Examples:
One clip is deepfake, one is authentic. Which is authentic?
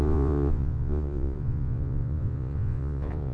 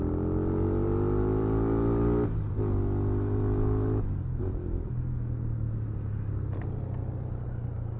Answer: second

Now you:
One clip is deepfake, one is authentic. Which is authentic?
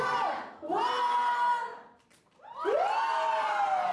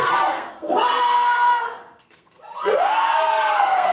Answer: first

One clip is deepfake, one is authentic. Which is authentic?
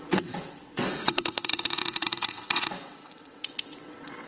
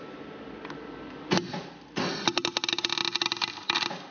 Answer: second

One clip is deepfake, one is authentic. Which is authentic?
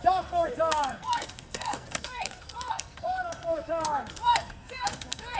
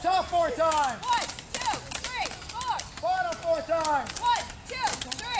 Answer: second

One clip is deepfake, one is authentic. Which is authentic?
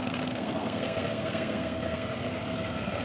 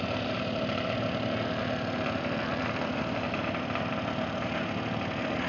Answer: second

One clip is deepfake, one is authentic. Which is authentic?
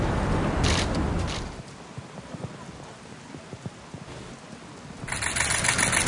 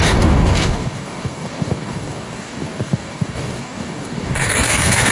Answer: first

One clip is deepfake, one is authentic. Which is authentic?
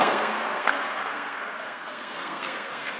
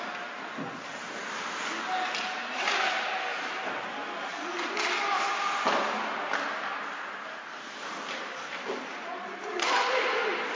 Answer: second